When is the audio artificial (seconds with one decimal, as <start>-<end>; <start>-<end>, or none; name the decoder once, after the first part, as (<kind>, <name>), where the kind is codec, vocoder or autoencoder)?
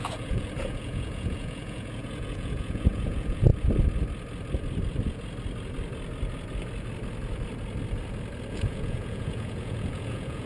0.0-3.5 (vocoder, Vocos); 8.5-10.5